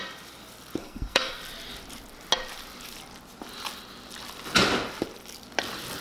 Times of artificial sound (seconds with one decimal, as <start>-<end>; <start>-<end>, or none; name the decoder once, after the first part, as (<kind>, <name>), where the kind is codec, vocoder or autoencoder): 0.8-1.4 (codec, SNAC)